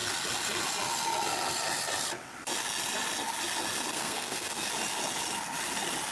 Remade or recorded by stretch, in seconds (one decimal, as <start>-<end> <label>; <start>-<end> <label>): 0.0-3.9 recorded; 3.9-4.7 remade; 4.7-6.1 recorded